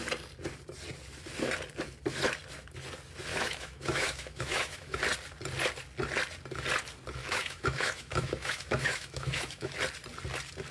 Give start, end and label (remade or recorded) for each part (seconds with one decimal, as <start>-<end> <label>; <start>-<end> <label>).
0.0-3.3 recorded; 3.3-5.0 remade; 5.0-7.2 recorded; 7.2-9.7 remade; 9.7-10.7 recorded